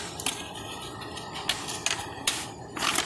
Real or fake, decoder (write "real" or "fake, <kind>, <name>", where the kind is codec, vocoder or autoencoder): real